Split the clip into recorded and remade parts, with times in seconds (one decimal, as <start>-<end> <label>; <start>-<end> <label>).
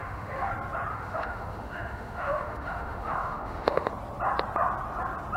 0.0-0.5 remade; 0.5-0.9 recorded; 0.9-3.9 remade; 3.9-5.4 recorded